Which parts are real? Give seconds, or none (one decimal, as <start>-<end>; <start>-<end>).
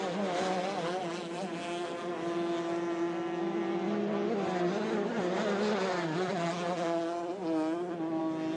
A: 0.0-8.6